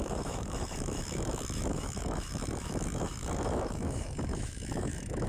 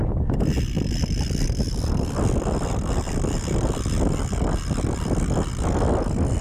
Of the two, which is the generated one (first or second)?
first